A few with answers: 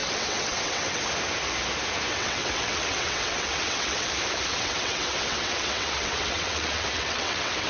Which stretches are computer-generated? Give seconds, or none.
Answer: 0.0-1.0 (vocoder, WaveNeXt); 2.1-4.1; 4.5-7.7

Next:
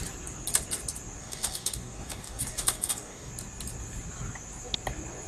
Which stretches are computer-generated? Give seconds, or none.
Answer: 1.2-3.3 (codec, DAC)

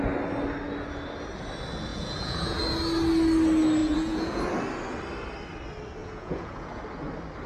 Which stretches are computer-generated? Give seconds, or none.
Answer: 1.9-2.6 (vocoder, Vocos); 3.8-4.4; 6.0-6.8

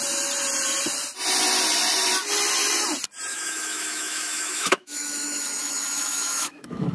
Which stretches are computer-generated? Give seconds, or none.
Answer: 3.3-6.9 (autoencoder, DAC-VAE)

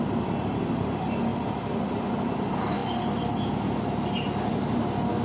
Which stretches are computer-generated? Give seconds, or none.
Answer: 1.3-1.8 (vocoder, BigVGAN v2)

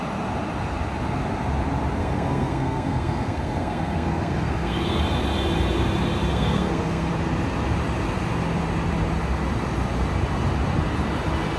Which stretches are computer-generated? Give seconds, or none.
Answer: 2.0-5.0 (codec, SNAC); 6.3-7.1

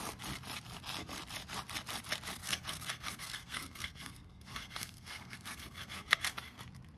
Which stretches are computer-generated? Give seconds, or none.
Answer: 2.4-6.6 (codec, SNAC)